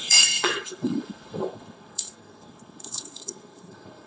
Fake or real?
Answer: fake